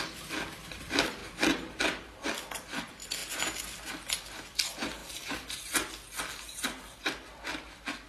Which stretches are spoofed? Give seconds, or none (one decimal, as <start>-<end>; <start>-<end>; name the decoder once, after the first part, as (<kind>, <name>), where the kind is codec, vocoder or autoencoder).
none